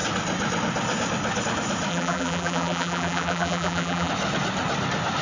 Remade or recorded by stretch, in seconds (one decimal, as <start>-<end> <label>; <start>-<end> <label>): 0.0-1.9 recorded; 1.9-4.1 remade; 4.1-5.2 recorded